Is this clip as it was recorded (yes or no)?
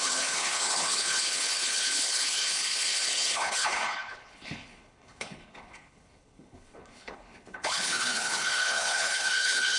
no